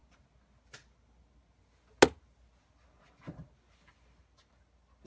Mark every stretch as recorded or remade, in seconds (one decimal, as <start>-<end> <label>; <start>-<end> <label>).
0.0-5.1 recorded